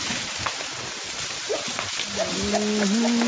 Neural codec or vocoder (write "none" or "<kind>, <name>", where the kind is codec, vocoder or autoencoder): none